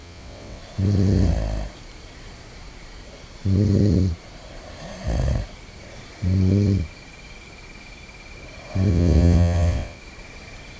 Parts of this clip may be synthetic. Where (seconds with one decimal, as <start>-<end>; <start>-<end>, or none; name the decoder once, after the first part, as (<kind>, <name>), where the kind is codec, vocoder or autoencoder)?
0.0-0.6 (vocoder, WaveNeXt); 8.9-10.0